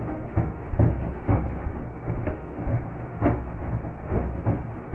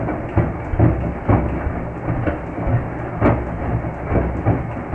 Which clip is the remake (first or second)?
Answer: first